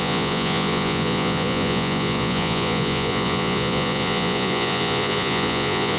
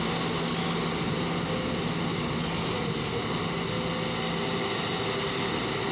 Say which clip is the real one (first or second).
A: second